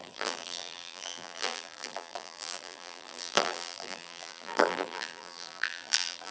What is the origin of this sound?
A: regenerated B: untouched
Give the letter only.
A